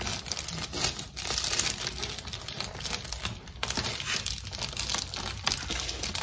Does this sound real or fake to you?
real